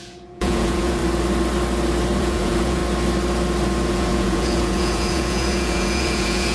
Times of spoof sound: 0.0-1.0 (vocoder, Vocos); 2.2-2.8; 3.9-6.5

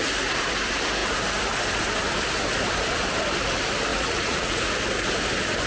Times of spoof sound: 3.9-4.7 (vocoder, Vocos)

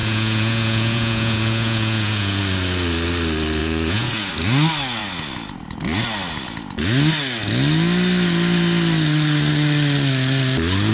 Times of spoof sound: 0.0-2.4 (vocoder, Vocos); 3.6-4.3